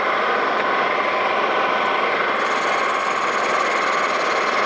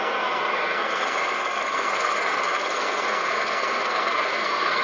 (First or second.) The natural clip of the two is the first